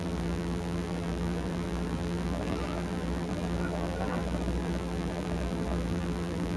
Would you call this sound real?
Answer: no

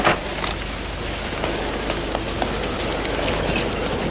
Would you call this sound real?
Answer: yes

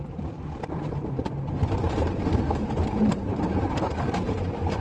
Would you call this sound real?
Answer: no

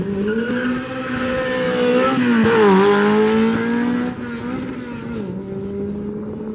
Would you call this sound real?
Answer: yes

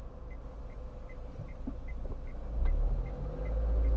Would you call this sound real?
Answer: yes